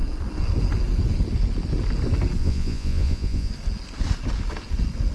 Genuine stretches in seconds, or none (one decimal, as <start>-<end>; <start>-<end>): 0.0-2.4; 3.5-5.1